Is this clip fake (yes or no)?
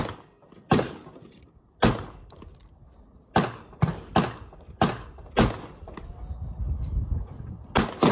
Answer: no